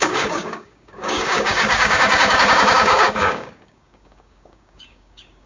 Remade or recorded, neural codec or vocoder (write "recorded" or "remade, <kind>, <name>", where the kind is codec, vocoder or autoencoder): remade, codec, DAC